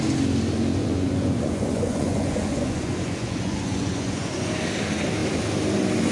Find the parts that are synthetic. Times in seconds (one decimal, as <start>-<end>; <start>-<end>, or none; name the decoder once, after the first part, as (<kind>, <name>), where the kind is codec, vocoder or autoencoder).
0.8-4.5 (vocoder, Vocos)